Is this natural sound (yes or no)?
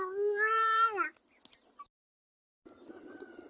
yes